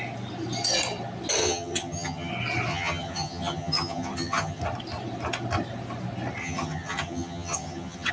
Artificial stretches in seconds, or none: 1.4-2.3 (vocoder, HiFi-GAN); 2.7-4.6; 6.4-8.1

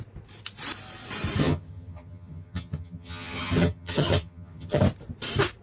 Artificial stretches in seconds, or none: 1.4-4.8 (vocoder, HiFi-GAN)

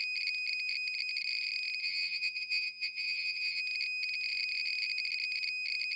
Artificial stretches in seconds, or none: 1.8-3.6 (vocoder, HiFi-GAN)

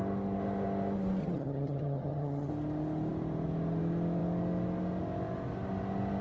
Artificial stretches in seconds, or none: 1.2-2.5 (vocoder, HiFi-GAN)

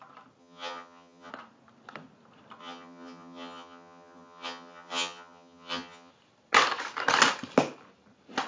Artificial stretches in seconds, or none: 0.4-1.3 (vocoder, HiFi-GAN); 2.6-6.1